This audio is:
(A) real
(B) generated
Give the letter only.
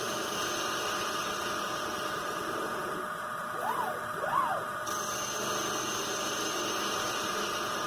A